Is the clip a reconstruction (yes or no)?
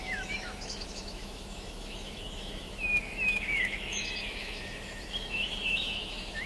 yes